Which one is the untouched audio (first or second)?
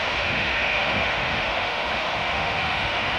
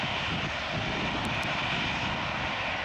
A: second